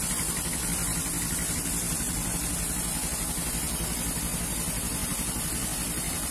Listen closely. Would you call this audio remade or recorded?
recorded